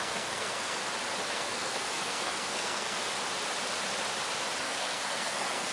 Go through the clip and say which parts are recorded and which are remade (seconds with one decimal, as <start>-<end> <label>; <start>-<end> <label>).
0.0-0.8 remade; 0.8-1.3 recorded; 1.3-3.0 remade; 3.0-4.6 recorded; 4.6-5.7 remade

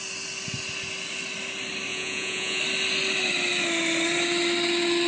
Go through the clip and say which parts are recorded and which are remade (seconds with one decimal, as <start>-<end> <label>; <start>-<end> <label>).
0.0-1.9 recorded; 1.9-2.6 remade; 2.6-5.1 recorded

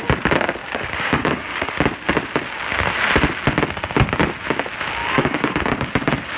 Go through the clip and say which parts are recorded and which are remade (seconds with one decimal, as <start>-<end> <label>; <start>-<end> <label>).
0.0-0.6 recorded; 0.6-1.7 remade; 1.7-5.0 recorded; 5.0-5.9 remade; 5.9-6.4 recorded